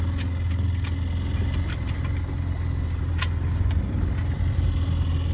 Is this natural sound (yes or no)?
yes